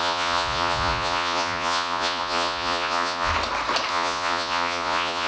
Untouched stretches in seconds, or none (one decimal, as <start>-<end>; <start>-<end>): 3.3-3.9